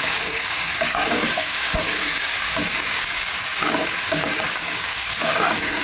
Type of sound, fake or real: fake